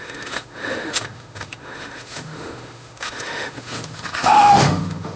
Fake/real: fake